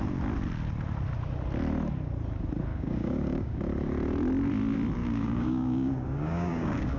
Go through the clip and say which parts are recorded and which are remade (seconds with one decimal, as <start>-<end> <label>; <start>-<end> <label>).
0.0-2.7 recorded; 2.7-3.6 remade; 3.6-5.0 recorded; 5.0-7.0 remade